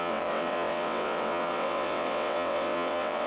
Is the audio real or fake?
fake